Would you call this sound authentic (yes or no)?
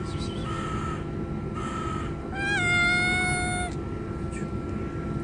yes